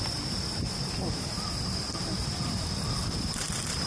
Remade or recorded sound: recorded